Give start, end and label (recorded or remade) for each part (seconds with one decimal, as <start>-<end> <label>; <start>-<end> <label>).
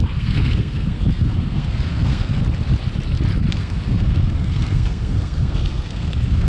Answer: 0.0-2.4 remade; 2.4-3.5 recorded; 3.5-6.5 remade